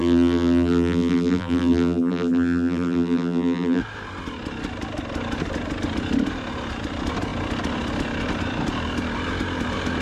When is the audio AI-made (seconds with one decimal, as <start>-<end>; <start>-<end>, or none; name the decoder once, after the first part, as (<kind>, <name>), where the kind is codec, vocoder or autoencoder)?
0.0-3.8 (vocoder, BigVGAN v2)